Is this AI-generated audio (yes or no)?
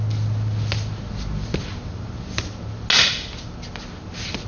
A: no